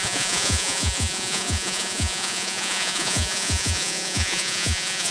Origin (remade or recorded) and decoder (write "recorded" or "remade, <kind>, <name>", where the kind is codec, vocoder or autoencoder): remade, vocoder, Vocos